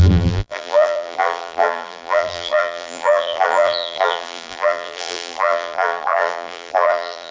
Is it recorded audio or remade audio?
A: remade